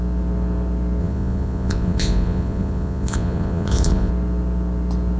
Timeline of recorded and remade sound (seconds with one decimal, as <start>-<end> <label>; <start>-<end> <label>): 0.0-1.0 recorded; 1.0-4.1 remade; 4.1-5.2 recorded